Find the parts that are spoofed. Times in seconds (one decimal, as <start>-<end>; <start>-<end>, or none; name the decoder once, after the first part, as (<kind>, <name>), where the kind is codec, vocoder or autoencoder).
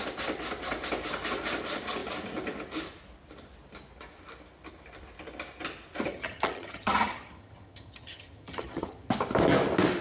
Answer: 6.1-9.1 (vocoder, HiFi-GAN)